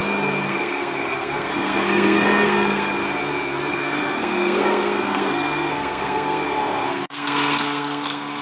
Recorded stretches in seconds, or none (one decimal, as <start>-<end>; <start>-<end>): 0.0-0.5; 3.0-3.7